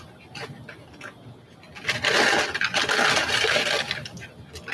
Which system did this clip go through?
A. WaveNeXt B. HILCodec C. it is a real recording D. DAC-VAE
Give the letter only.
C